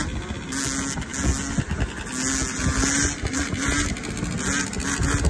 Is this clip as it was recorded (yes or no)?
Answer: yes